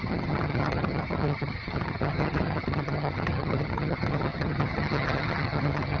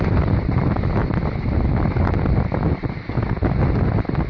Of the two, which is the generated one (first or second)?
first